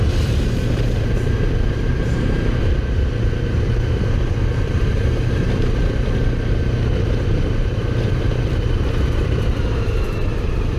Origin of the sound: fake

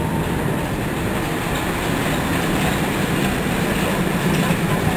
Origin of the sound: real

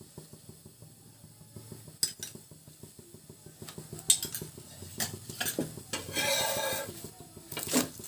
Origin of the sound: real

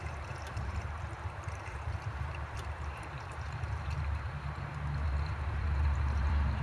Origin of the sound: fake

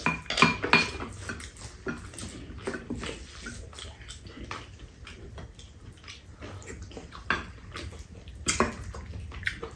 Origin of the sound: real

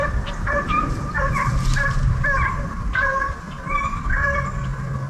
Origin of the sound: fake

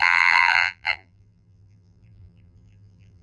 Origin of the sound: fake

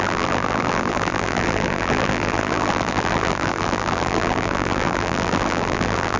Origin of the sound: fake